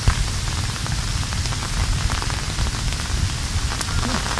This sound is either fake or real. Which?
real